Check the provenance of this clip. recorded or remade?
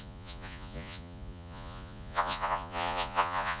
remade